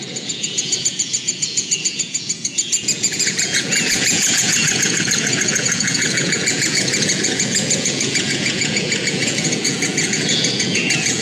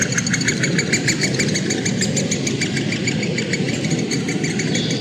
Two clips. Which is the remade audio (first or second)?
first